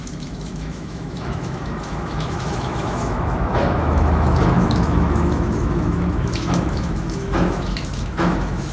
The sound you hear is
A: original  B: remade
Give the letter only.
B